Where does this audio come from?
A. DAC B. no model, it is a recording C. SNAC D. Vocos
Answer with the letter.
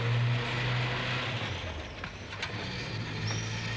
B